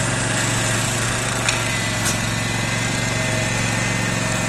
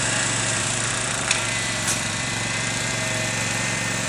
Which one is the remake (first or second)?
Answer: second